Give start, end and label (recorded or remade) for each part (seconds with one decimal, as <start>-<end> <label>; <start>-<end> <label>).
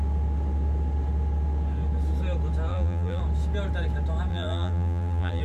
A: 0.0-2.7 recorded; 2.7-3.2 remade; 3.2-4.3 recorded; 4.3-5.4 remade